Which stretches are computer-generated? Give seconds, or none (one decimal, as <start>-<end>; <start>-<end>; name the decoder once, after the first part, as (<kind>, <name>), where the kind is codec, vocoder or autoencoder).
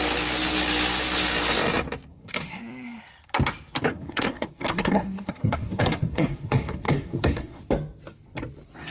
2.1-2.6 (codec, SNAC); 3.9-7.6